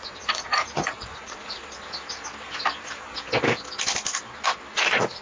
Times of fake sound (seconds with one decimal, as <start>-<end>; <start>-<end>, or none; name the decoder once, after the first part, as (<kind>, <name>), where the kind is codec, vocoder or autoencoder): 0.0-1.6 (vocoder, Vocos); 4.7-5.2